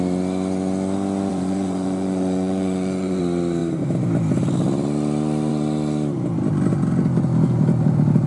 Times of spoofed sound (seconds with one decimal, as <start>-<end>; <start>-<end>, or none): 1.3-3.2